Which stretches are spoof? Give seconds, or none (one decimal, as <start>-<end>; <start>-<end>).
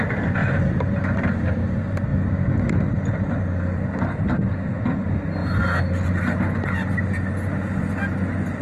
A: 0.4-0.9